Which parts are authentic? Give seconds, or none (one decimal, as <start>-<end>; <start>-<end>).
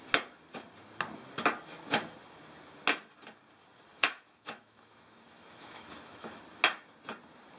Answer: 0.0-3.9; 6.4-7.6